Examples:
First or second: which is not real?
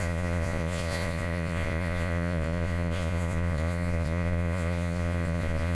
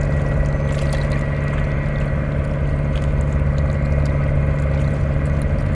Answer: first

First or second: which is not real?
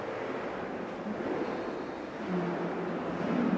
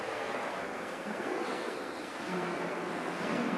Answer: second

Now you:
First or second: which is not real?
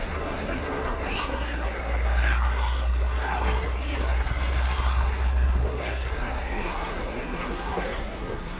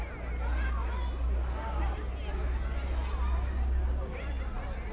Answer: first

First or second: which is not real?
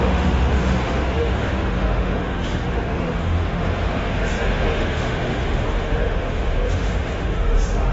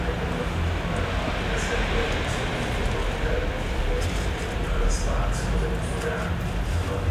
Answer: first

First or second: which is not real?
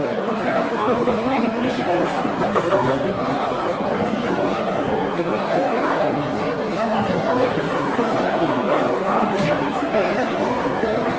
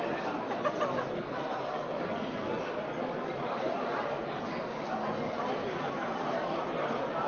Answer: first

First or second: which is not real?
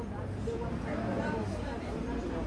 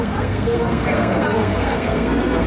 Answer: second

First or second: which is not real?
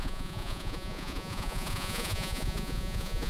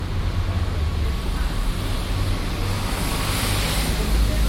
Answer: first